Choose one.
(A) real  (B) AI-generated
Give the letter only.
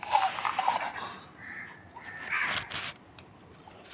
A